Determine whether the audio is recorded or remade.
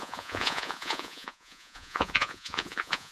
remade